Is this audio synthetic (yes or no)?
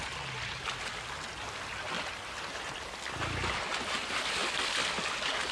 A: no